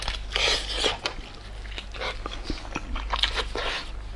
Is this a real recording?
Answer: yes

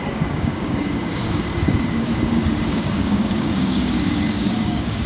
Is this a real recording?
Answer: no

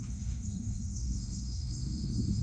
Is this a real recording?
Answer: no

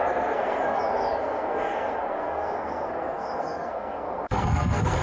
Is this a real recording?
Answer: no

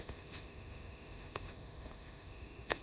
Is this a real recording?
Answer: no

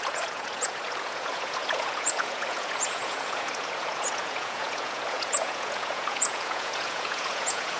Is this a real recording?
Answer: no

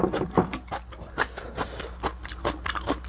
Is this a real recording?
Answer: yes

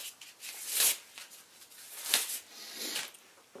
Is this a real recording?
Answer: yes